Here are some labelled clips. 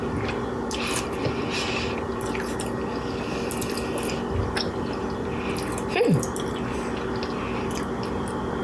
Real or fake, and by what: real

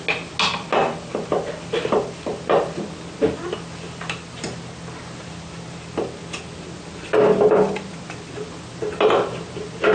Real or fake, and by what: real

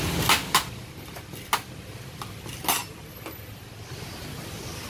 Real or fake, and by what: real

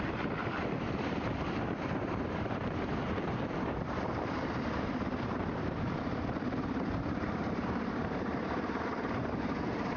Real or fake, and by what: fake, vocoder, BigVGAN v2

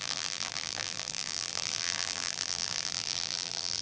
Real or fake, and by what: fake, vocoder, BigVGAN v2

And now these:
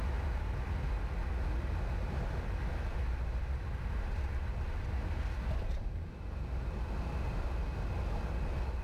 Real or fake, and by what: real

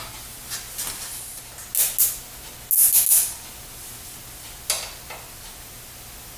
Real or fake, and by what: real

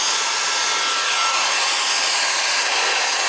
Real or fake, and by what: real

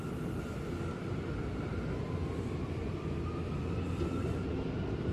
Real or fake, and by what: real